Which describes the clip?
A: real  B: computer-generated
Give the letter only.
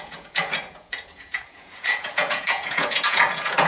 B